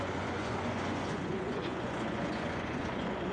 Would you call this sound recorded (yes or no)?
no